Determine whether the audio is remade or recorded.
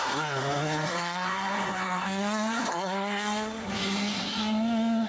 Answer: remade